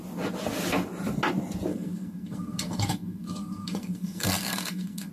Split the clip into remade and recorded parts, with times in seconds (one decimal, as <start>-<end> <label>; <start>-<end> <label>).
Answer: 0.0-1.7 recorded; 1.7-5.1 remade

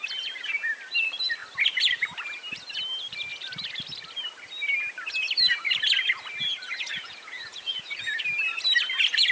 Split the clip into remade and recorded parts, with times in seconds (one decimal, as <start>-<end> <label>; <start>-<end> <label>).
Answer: 0.0-6.9 recorded; 6.9-8.2 remade; 8.2-9.3 recorded

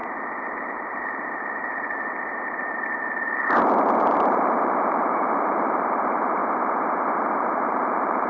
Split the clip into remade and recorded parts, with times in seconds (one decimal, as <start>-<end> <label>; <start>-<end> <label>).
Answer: 0.0-4.0 recorded; 4.0-6.4 remade; 6.4-7.3 recorded; 7.3-8.3 remade